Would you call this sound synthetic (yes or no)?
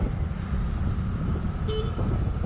no